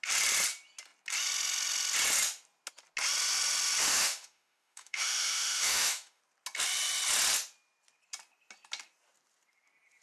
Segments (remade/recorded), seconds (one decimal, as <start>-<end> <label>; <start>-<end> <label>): 0.0-3.8 recorded; 3.8-6.2 remade; 6.2-10.0 recorded